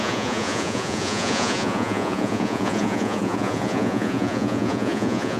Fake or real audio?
fake